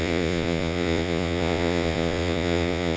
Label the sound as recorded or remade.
remade